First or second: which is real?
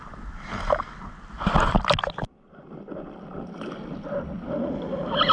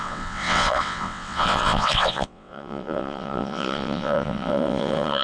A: first